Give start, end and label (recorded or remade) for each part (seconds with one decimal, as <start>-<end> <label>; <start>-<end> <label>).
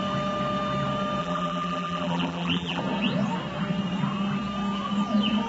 0.0-1.2 recorded; 1.2-2.8 remade; 2.8-5.5 recorded